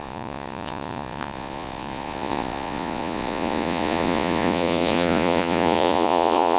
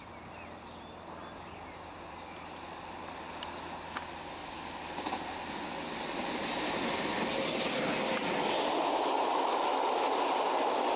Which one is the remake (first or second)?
first